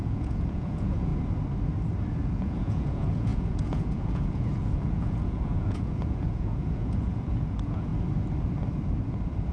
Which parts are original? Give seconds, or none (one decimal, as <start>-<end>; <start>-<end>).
1.1-2.1; 7.9-9.5